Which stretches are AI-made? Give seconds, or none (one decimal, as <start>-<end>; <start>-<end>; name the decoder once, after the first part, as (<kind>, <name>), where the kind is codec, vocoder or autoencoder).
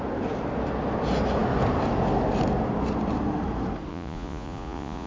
3.9-5.1 (vocoder, Vocos)